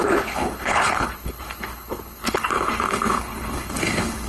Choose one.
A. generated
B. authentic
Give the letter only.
A